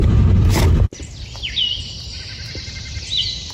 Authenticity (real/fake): real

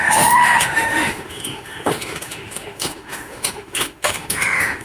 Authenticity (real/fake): fake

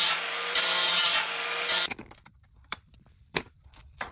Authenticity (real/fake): fake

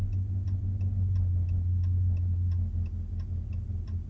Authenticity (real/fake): real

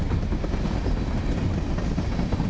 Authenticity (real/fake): real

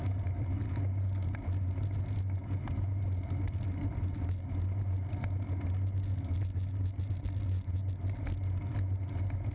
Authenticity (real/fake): real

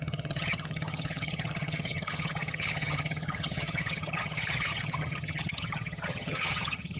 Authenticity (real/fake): fake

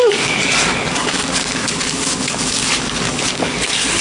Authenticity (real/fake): fake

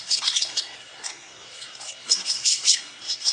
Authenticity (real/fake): fake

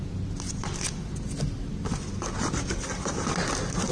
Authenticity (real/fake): real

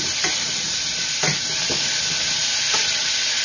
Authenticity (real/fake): real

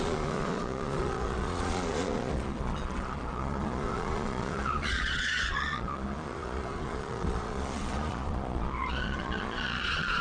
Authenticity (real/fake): fake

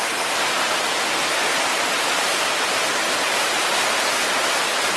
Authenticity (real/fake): fake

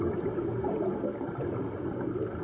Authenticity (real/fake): real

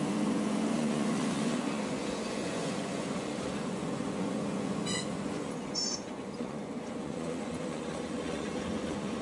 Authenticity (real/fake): fake